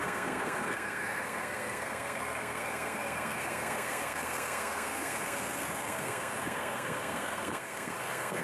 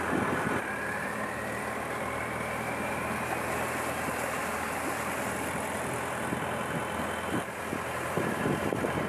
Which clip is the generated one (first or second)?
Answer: first